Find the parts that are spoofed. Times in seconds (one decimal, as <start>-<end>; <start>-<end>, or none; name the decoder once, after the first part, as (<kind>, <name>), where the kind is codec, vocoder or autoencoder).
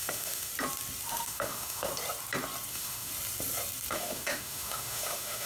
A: 0.0-0.5 (autoencoder, DAC-VAE); 1.1-1.9; 2.7-3.1; 3.9-5.5